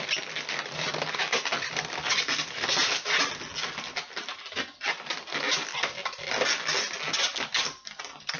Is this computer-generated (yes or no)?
no